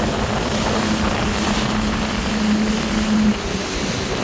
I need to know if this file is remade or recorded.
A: recorded